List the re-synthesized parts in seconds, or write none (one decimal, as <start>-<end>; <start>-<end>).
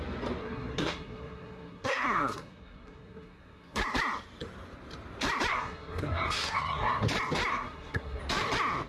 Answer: 0.4-3.8; 5.5-7.0; 7.5-8.2